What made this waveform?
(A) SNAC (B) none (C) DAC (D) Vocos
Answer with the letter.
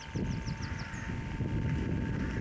B